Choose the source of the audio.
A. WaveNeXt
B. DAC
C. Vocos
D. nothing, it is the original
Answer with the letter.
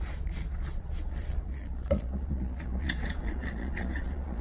C